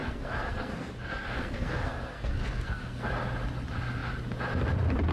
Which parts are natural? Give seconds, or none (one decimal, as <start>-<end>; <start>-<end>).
3.1-5.1